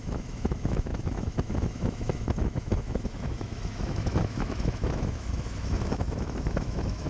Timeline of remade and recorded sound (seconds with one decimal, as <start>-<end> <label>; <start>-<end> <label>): 0.0-7.1 remade

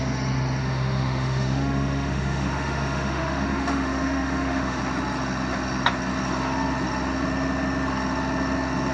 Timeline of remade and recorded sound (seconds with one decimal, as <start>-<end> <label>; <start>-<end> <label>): 0.0-0.6 recorded; 0.6-4.8 remade; 4.8-8.9 recorded

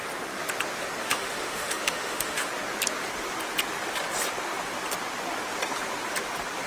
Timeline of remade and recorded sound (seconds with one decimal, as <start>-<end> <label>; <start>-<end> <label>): 0.0-1.0 recorded; 1.0-2.5 remade; 2.5-6.7 recorded

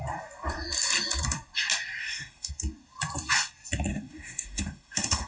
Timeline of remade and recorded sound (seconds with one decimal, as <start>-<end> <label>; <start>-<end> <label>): 0.0-2.0 recorded; 2.0-2.5 remade; 2.5-3.9 recorded; 3.9-5.3 remade